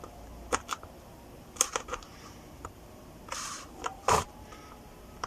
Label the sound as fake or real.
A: fake